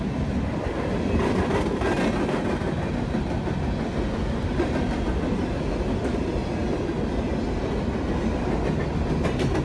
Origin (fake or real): real